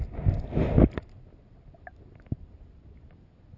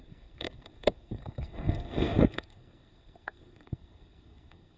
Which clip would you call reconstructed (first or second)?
second